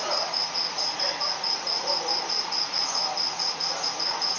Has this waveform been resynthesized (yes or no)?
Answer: yes